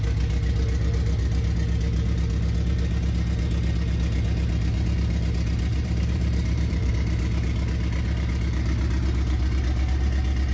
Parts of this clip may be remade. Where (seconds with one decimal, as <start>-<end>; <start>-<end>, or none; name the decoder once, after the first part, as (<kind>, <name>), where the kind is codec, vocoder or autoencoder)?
5.7-6.9 (vocoder, BigVGAN v2)